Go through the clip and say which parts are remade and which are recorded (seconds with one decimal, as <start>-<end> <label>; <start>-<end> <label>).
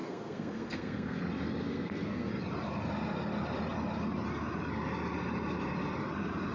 0.0-1.2 remade; 1.2-1.6 recorded; 1.6-2.3 remade; 2.3-6.5 recorded